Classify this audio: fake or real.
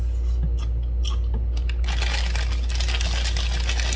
real